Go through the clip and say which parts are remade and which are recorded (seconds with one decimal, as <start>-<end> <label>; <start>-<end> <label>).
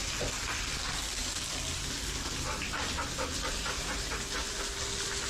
0.0-5.3 recorded